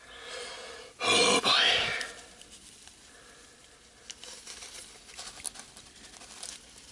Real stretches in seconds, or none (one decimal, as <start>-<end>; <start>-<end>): 0.0-6.9